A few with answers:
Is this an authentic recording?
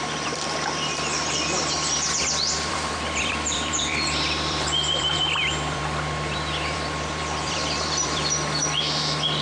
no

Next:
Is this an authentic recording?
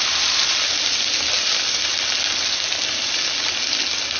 yes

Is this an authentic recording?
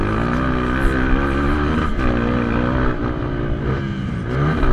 yes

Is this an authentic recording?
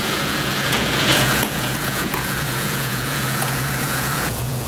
no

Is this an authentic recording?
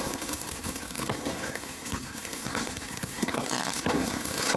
no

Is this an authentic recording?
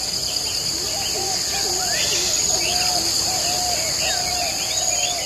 yes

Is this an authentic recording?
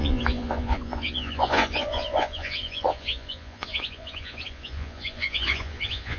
no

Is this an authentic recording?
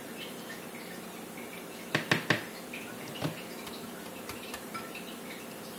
yes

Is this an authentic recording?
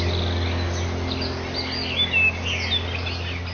yes